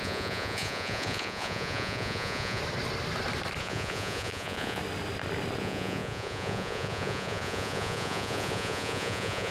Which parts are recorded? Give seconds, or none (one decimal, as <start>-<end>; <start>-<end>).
2.6-3.6; 4.8-5.6